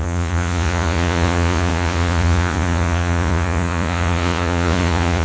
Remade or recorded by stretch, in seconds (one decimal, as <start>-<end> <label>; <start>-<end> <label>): 0.0-5.2 remade